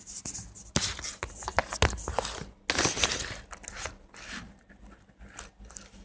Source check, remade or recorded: recorded